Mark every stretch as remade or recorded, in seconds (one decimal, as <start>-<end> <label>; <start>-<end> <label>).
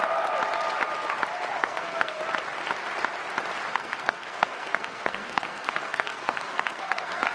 0.0-1.6 recorded; 1.6-2.2 remade; 2.2-3.7 recorded; 3.7-7.3 remade